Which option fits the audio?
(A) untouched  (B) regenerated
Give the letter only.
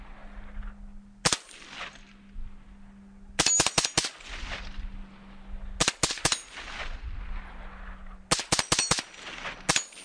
A